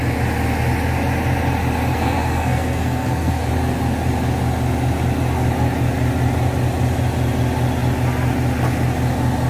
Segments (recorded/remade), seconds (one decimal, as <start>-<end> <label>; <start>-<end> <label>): 0.0-1.9 recorded; 1.9-3.5 remade; 3.5-9.5 recorded